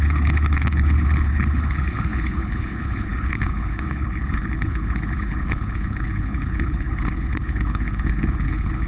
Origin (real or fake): fake